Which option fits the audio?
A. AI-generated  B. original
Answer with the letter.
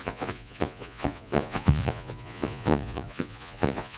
A